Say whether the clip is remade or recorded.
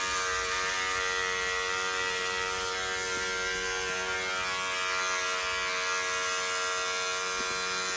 recorded